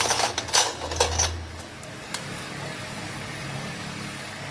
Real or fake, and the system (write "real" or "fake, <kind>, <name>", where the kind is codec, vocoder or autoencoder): fake, codec, DAC